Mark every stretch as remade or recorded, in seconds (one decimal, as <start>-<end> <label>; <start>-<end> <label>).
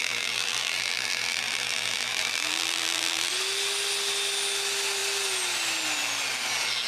0.0-3.3 remade; 3.3-6.9 recorded